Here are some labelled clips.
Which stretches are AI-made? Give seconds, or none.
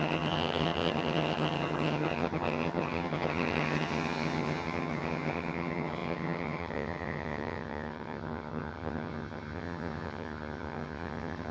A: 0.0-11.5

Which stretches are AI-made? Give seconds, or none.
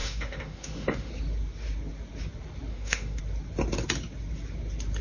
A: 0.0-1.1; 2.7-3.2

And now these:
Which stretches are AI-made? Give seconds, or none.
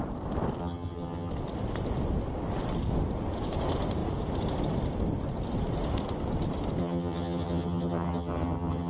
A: 0.6-1.3; 6.8-8.9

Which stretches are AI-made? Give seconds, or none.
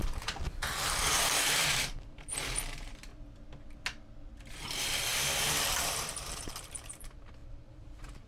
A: 0.0-3.1; 4.5-8.3